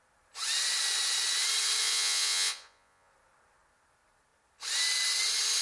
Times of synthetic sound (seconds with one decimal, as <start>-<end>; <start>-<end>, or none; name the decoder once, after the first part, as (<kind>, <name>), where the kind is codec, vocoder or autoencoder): 1.8-3.1 (vocoder, Vocos)